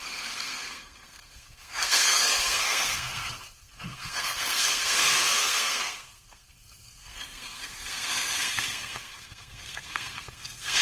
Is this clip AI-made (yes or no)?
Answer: yes